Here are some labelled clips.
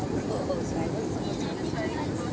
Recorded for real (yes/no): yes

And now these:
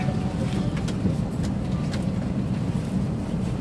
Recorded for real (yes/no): yes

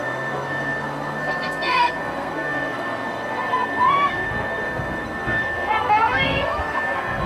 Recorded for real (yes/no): no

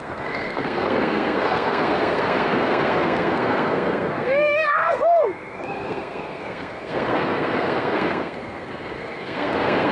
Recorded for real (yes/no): no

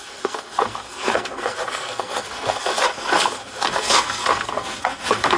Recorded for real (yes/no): no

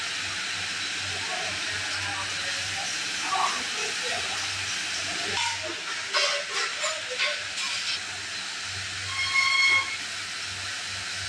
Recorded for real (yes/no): yes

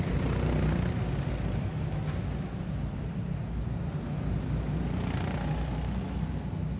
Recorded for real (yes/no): yes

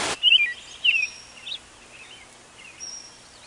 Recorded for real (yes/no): yes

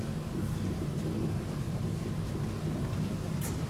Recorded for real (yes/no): yes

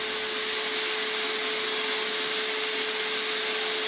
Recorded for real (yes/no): yes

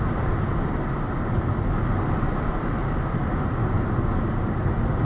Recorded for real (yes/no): yes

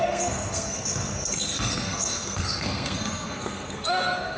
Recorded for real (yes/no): no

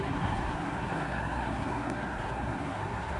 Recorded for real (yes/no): no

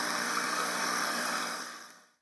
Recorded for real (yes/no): no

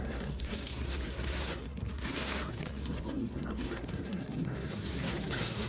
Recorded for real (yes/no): no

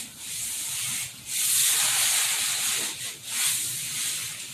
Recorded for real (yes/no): yes